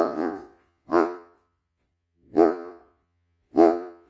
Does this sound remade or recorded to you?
remade